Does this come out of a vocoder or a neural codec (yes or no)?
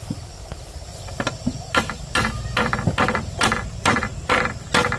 no